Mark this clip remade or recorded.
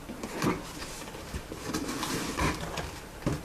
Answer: recorded